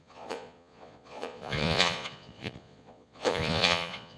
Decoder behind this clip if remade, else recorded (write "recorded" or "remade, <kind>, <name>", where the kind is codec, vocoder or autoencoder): remade, vocoder, Vocos